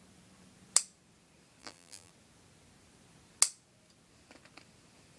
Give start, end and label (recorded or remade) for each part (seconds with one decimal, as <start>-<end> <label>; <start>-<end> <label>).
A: 0.0-1.6 recorded; 1.6-2.1 remade; 2.1-5.2 recorded